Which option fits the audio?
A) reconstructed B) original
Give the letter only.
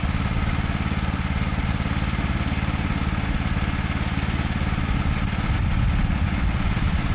B